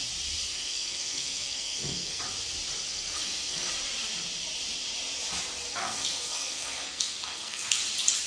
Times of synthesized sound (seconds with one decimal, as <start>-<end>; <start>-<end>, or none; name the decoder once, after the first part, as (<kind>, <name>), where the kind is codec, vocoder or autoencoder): 0.5-2.2 (codec, SNAC); 2.9-3.7; 5.7-7.8